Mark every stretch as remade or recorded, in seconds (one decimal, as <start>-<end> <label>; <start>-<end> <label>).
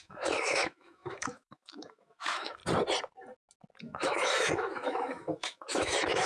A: 0.0-2.6 remade; 2.6-3.8 recorded; 3.8-6.3 remade